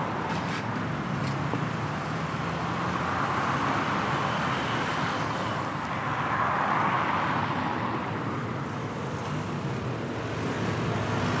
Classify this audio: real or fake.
real